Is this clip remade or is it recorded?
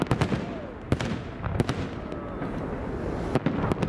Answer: recorded